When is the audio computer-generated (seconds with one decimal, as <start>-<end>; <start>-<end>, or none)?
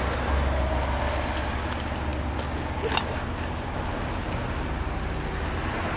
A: none